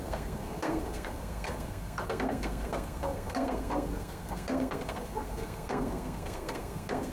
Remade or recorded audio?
remade